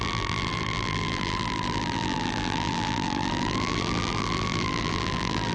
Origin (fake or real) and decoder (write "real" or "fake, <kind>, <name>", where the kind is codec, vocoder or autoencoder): fake, vocoder, BigVGAN v2